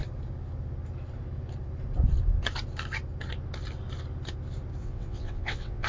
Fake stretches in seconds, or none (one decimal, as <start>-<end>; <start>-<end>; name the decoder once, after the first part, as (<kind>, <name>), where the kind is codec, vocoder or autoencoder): 4.8-5.9 (vocoder, WaveNeXt)